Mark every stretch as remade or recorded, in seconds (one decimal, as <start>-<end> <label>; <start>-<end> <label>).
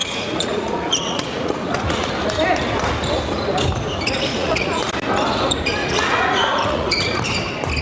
0.0-2.1 remade; 2.1-4.3 recorded; 4.3-4.9 remade; 4.9-5.8 recorded; 5.8-7.2 remade; 7.2-7.8 recorded